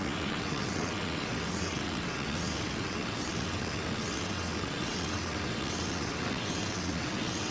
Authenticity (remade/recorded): remade